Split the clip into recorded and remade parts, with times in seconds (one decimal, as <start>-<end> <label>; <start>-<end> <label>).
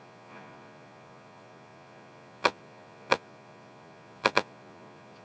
0.0-5.2 remade